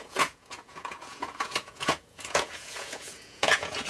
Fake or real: fake